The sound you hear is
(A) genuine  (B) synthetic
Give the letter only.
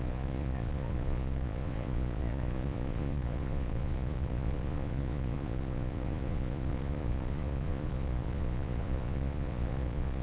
B